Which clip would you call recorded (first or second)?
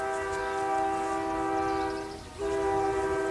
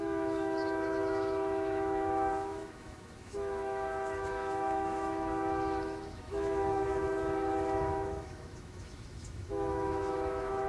first